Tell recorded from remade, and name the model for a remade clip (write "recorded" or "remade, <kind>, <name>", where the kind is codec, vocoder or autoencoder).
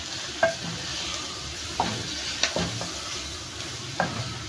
recorded